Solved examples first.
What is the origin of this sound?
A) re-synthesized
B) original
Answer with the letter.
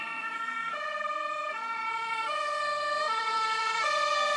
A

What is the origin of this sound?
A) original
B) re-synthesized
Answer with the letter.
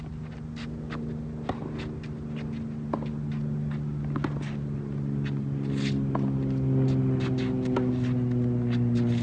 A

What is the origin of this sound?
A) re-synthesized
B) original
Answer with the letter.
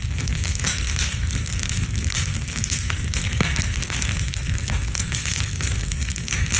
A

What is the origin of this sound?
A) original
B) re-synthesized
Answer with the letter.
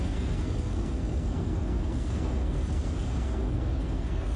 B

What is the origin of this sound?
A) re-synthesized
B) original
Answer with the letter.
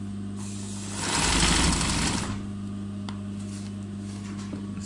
B